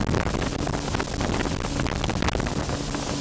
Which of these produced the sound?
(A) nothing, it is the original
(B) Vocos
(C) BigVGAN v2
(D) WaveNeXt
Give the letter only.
A